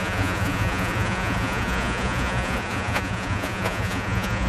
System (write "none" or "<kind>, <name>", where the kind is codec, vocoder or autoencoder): vocoder, Vocos